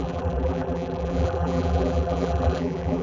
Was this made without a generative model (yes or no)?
no